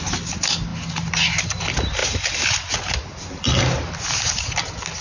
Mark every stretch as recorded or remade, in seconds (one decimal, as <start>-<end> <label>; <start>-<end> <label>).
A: 0.0-5.0 recorded